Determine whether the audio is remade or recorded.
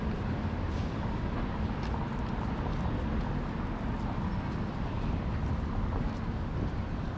recorded